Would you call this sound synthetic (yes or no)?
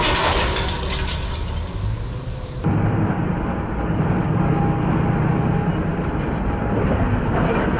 no